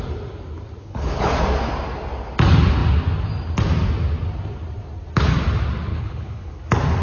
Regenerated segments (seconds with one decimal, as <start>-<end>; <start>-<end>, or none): 0.8-1.4; 5.9-6.6